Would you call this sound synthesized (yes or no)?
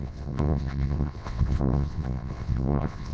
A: yes